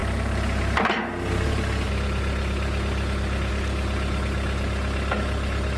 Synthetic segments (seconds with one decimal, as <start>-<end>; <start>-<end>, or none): none